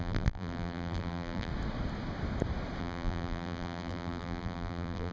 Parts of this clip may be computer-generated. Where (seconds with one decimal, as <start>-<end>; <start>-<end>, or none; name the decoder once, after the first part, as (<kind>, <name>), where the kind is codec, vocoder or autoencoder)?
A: 0.0-1.5 (vocoder, BigVGAN v2); 2.8-5.1